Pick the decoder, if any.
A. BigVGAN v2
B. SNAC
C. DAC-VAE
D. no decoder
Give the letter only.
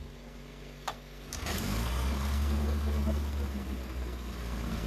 B